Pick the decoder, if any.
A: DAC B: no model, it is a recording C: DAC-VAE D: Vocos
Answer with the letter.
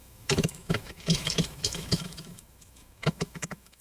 C